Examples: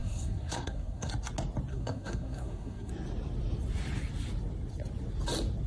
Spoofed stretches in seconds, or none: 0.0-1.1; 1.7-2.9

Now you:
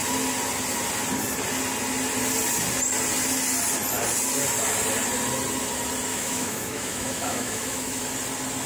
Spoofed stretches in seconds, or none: 6.1-8.0

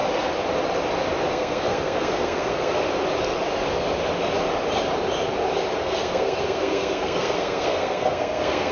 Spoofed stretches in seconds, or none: 1.3-2.8; 5.8-8.7

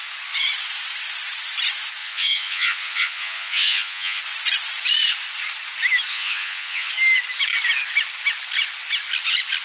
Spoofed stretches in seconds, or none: 2.0-4.2; 6.1-6.9

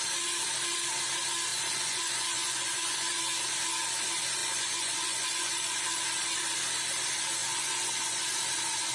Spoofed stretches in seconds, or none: 1.5-3.2; 4.4-5.8; 7.4-8.2

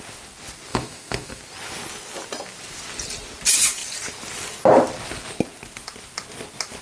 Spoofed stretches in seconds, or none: 0.7-1.4

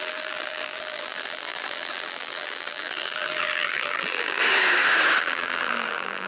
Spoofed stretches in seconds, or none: 0.0-4.4; 5.2-6.3